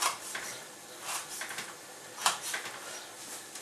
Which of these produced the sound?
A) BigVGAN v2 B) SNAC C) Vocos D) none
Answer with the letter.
D